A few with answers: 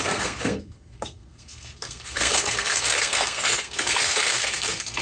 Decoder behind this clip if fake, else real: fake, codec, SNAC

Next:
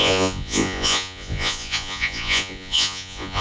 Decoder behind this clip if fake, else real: fake, vocoder, Vocos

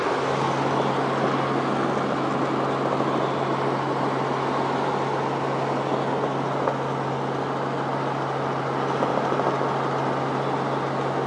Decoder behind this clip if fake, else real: real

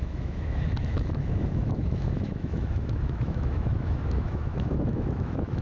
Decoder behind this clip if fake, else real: fake, autoencoder, DAC-VAE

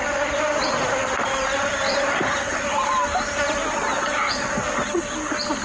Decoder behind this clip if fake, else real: real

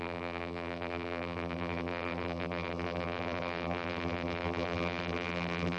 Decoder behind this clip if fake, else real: fake, vocoder, BigVGAN v2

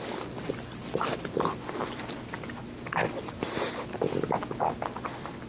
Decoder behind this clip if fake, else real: real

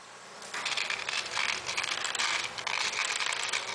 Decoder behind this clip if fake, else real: real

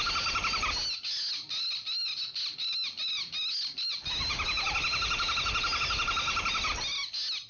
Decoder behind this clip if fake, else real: real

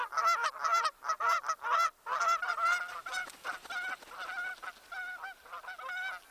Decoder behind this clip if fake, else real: real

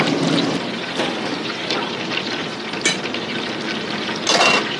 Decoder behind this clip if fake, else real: real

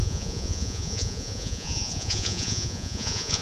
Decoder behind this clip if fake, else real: fake, vocoder, Vocos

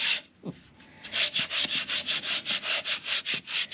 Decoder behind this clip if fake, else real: real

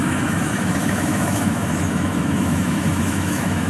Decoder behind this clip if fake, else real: fake, autoencoder, DAC-VAE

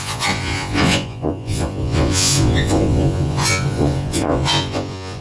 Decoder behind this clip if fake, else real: fake, vocoder, Vocos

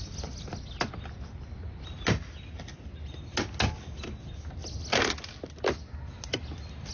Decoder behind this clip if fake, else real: real